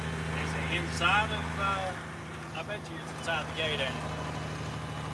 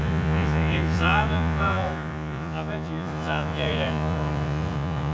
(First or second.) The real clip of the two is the first